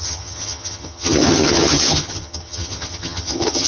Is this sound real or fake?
fake